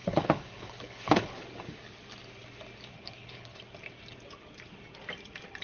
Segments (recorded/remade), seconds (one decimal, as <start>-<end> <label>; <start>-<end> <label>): 0.0-1.4 remade; 1.4-2.9 recorded; 2.9-3.6 remade; 3.6-5.6 recorded